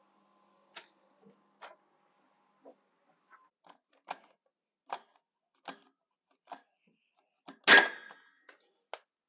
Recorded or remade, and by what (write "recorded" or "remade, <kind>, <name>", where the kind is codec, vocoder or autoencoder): recorded